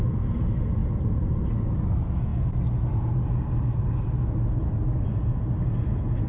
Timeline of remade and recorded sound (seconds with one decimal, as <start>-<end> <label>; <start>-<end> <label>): 0.0-6.3 recorded